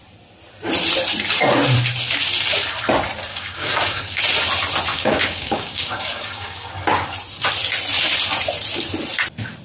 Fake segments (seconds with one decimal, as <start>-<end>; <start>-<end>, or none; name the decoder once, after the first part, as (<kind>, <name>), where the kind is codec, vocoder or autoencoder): 3.3-4.2 (codec, DAC); 4.9-6.7